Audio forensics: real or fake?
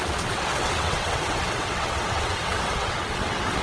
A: fake